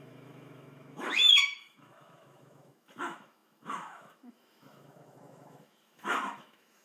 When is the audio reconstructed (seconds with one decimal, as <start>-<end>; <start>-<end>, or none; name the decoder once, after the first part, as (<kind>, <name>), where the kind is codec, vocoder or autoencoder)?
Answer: 0.0-6.8 (autoencoder, DAC-VAE)